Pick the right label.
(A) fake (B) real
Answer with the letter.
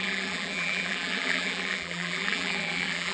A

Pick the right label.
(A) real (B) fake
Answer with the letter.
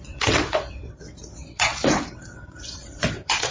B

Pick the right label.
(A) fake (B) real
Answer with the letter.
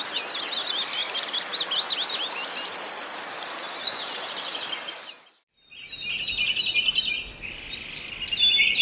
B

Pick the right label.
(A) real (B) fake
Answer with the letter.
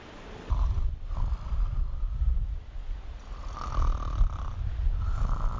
A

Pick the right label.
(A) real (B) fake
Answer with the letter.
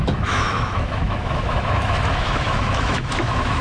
B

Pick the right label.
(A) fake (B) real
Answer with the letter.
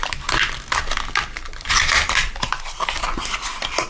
B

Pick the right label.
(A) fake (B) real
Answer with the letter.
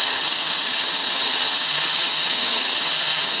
A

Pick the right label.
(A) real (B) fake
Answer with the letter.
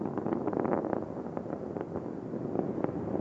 A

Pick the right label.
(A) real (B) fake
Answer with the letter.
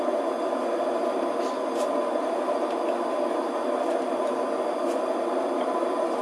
A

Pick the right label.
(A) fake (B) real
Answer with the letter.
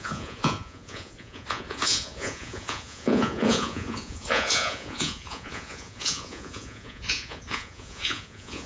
A